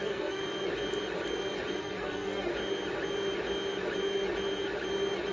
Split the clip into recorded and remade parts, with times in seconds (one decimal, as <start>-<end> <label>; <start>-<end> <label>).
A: 0.0-0.4 remade; 0.4-1.8 recorded; 1.8-2.5 remade; 2.5-5.3 recorded